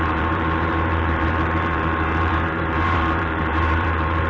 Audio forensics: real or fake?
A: fake